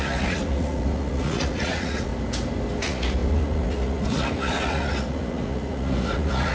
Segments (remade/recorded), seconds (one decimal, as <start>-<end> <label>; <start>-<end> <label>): 0.0-2.1 remade; 2.1-2.8 recorded; 2.8-6.5 remade